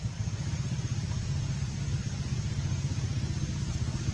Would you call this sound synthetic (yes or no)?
no